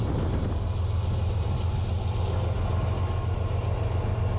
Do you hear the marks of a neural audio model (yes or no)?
no